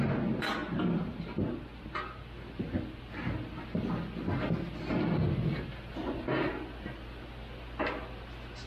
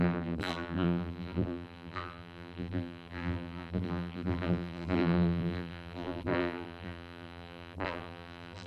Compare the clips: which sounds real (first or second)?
first